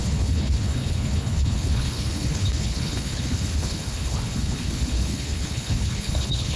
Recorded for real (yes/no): no